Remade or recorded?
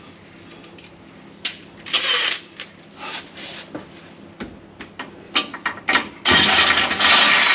recorded